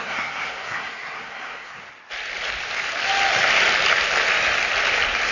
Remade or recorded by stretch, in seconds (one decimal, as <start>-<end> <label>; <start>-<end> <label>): 0.0-1.8 remade; 1.8-5.3 recorded